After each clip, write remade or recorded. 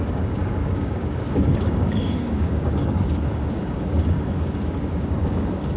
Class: remade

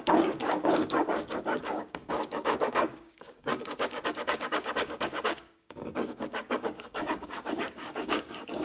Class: remade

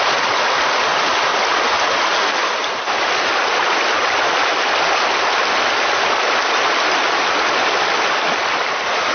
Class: recorded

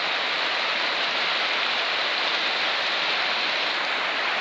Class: recorded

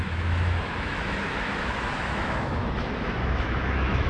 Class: remade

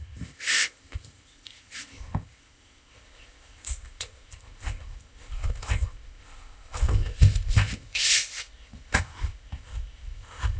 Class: remade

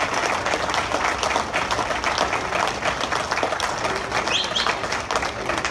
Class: recorded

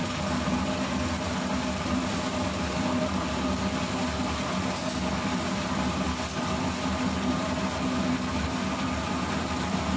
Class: recorded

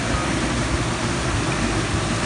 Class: recorded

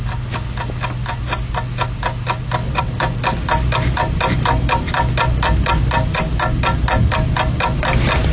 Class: recorded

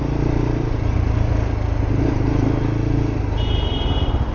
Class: recorded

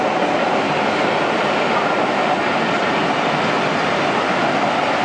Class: recorded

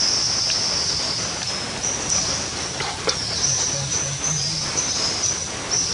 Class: recorded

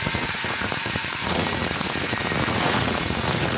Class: remade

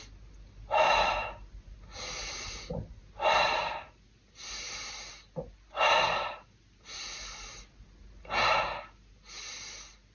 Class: recorded